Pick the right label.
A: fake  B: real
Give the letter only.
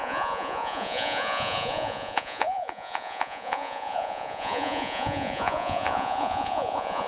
A